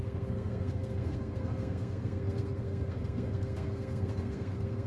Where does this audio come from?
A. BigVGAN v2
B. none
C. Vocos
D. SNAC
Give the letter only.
D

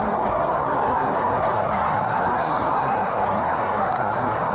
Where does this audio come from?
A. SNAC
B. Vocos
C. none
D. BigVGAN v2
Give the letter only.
A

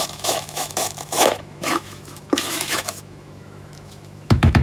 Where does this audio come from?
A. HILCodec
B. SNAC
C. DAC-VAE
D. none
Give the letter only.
C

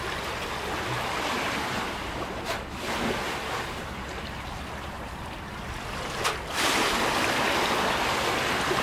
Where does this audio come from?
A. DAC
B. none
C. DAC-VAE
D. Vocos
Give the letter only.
B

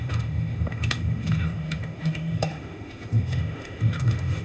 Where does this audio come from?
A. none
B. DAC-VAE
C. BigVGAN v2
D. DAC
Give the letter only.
B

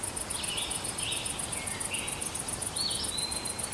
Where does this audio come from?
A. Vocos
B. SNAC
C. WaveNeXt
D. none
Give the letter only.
D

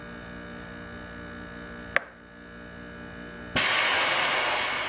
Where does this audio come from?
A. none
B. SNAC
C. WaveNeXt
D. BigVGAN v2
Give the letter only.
A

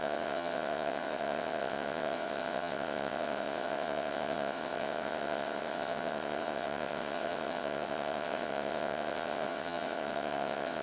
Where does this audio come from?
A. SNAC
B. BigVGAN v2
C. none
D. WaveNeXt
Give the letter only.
D